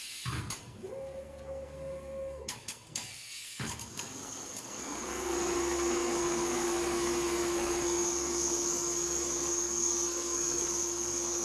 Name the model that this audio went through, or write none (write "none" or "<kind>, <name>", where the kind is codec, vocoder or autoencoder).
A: codec, SNAC